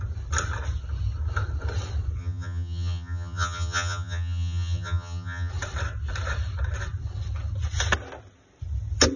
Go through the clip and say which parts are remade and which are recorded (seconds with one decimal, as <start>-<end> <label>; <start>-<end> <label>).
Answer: 0.0-2.2 recorded; 2.2-5.5 remade; 5.5-9.2 recorded